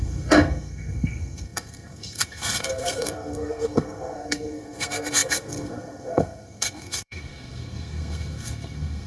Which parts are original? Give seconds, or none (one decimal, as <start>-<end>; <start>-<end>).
none